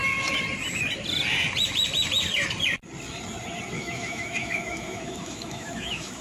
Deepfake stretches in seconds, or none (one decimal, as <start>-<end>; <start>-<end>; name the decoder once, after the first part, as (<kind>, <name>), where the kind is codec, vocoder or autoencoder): 3.7-6.2 (autoencoder, DAC-VAE)